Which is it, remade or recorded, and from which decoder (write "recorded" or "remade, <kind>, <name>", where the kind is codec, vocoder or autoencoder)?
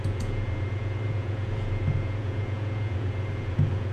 remade, vocoder, Vocos